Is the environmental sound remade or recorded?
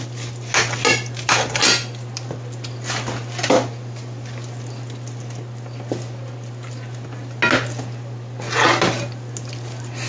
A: recorded